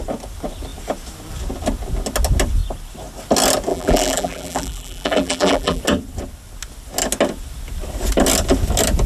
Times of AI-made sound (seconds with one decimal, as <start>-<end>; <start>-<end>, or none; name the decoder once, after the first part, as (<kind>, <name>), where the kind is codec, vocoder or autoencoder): 3.7-5.8 (vocoder, BigVGAN v2)